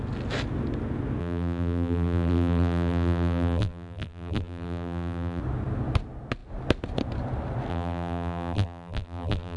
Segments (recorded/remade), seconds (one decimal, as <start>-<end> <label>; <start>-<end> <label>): 0.0-1.2 recorded; 1.2-5.4 remade; 5.4-7.7 recorded; 7.7-9.6 remade